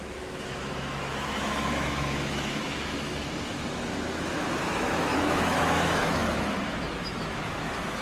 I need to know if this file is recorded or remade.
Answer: remade